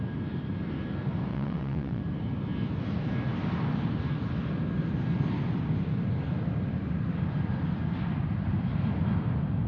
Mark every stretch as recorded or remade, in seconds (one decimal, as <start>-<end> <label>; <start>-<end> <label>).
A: 0.0-1.3 recorded; 1.3-2.0 remade; 2.0-9.7 recorded